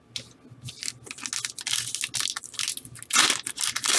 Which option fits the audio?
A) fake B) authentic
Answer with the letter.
B